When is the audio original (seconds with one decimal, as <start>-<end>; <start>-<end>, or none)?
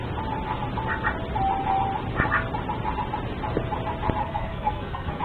0.0-4.2